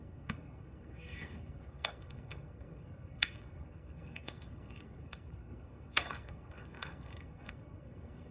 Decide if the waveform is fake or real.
fake